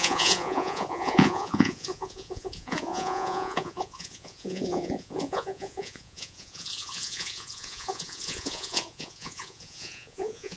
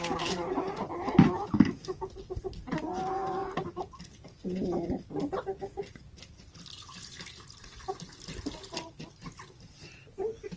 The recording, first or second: second